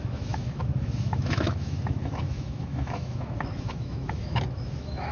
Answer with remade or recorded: remade